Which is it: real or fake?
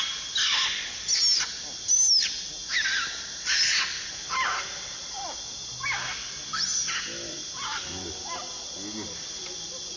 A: real